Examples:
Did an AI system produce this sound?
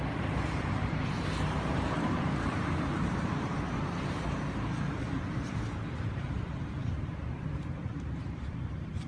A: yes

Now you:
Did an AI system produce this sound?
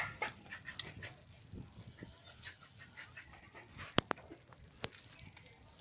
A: no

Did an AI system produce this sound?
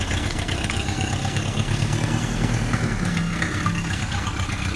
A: yes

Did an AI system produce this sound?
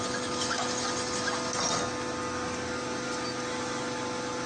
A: no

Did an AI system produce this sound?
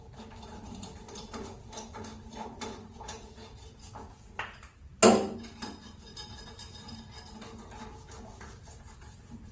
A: no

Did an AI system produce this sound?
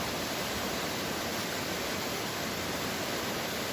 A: yes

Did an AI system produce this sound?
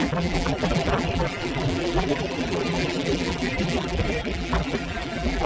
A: yes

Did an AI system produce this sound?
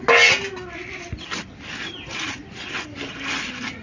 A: no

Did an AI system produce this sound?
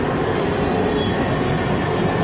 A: no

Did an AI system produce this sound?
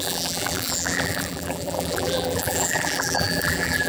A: yes